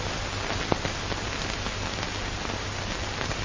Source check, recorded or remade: recorded